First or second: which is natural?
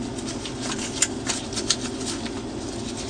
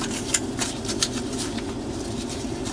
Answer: first